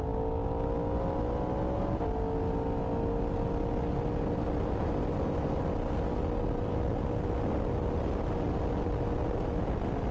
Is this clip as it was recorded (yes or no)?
yes